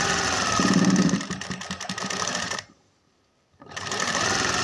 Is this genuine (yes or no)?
no